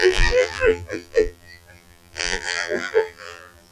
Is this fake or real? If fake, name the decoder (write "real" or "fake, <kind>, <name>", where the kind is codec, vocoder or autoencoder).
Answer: fake, vocoder, BigVGAN v2